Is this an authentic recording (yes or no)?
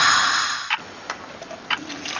yes